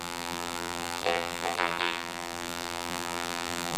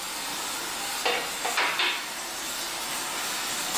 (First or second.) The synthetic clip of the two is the first